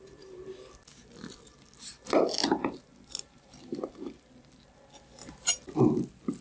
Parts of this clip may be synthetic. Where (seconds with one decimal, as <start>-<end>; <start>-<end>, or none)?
none

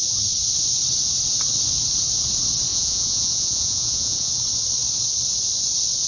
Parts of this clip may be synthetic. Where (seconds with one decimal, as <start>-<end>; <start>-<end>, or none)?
2.7-4.3

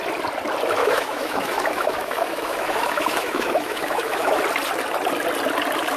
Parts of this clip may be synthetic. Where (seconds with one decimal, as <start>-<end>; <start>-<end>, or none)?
0.8-4.4